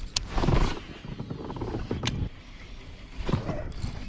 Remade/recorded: recorded